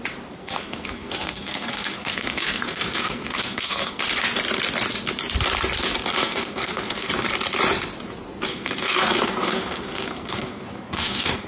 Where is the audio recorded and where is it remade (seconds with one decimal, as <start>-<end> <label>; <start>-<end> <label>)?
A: 0.0-0.4 recorded; 0.4-4.0 remade; 4.0-6.1 recorded; 6.1-7.1 remade; 7.1-8.5 recorded; 8.5-11.5 remade